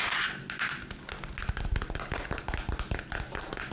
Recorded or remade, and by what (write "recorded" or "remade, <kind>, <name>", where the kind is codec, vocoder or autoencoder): recorded